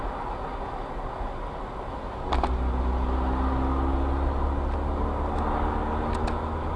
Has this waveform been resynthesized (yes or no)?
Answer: no